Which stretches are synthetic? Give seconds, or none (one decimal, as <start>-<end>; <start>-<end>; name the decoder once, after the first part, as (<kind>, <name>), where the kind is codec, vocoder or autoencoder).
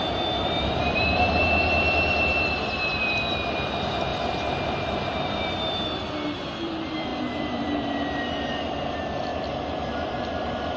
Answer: 0.0-9.3 (vocoder, BigVGAN v2); 9.9-10.8